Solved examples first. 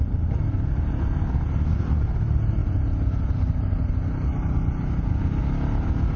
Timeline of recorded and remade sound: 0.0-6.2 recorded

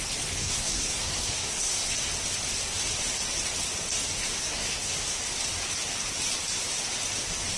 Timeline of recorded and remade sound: 0.0-0.4 recorded; 0.4-1.9 remade; 1.9-4.4 recorded; 4.4-5.2 remade; 5.2-7.6 recorded

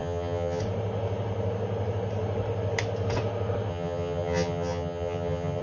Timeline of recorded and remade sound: 0.0-0.6 remade; 0.6-3.7 recorded; 3.7-5.6 remade

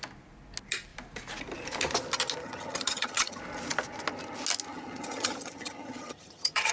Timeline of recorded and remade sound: 0.0-2.4 recorded; 2.4-3.4 remade; 3.4-4.7 recorded; 4.7-6.7 remade